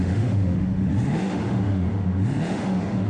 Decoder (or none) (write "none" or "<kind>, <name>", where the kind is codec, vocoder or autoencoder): autoencoder, DAC-VAE